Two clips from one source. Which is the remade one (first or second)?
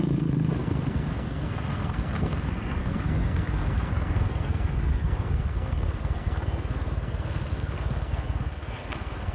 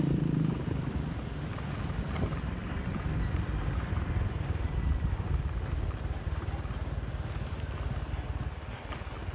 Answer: first